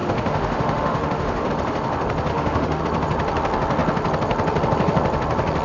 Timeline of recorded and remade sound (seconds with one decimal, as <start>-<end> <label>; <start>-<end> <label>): 0.0-1.5 remade; 1.5-2.3 recorded; 2.3-2.8 remade; 2.8-5.6 recorded